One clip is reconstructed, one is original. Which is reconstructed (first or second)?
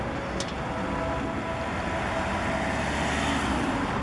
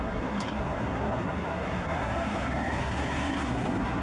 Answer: second